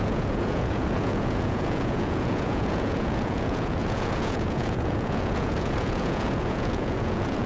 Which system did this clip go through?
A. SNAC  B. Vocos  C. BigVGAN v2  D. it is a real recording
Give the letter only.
B